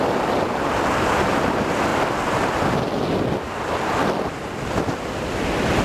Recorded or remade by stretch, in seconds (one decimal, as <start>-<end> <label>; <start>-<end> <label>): 0.0-5.8 recorded